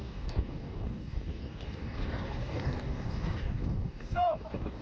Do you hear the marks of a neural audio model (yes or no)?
yes